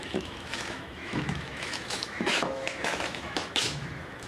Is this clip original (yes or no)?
no